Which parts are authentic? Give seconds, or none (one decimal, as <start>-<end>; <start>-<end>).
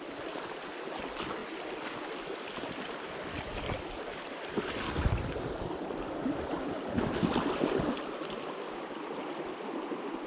0.0-10.3